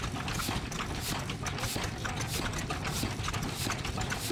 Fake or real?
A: real